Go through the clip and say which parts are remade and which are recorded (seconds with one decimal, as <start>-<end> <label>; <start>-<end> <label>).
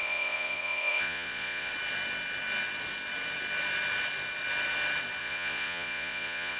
0.0-1.7 remade; 1.7-5.2 recorded; 5.2-6.6 remade